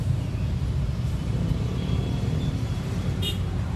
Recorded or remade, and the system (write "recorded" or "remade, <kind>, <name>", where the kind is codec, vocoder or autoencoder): remade, vocoder, BigVGAN v2